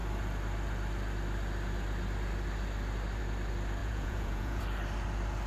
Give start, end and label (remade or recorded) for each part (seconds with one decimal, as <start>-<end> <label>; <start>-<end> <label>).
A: 0.0-3.8 recorded; 3.8-4.6 remade; 4.6-5.5 recorded